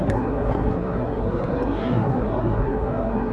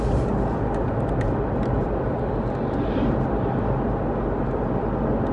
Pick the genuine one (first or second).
second